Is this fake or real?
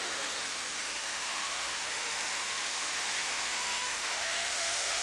fake